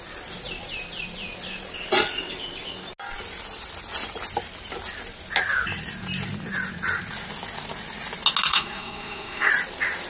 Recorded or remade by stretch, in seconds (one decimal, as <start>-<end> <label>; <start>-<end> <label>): 0.0-8.5 recorded; 8.5-9.5 remade; 9.5-10.1 recorded